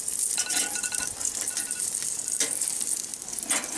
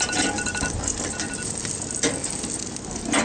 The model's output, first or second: first